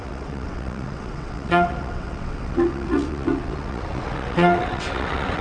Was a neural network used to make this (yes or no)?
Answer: yes